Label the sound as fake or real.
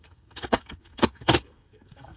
fake